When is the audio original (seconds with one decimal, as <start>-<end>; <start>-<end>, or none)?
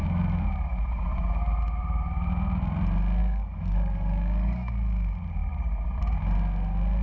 0.0-3.2; 4.7-7.0